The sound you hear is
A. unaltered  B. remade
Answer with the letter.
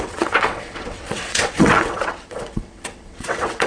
B